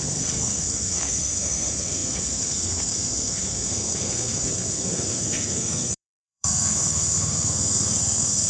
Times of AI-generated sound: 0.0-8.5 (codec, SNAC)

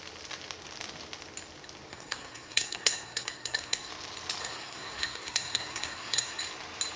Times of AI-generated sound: 1.9-3.9 (codec, SNAC); 4.4-6.4

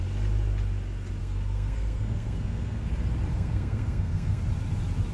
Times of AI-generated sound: 1.2-2.9 (codec, SNAC); 3.3-4.4

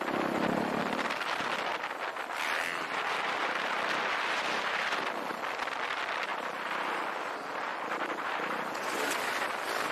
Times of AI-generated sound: 6.3-7.3 (vocoder, BigVGAN v2); 7.7-8.9

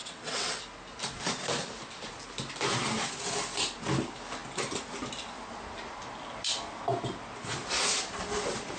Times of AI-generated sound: 0.0-0.6 (vocoder, WaveNeXt)

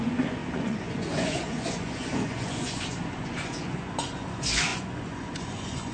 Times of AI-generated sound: 0.0-5.9 (vocoder, Vocos)